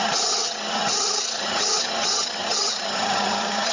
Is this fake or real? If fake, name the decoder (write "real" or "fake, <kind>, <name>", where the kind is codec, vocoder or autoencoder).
fake, vocoder, HiFi-GAN